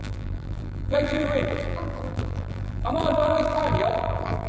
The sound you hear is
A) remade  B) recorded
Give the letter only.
A